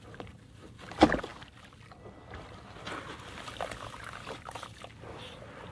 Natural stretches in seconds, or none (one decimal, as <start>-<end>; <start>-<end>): 0.0-5.7